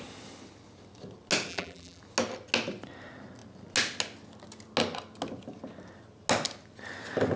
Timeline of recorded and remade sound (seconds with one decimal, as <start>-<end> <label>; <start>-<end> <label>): 0.0-1.5 recorded; 1.5-2.0 remade; 2.0-7.4 recorded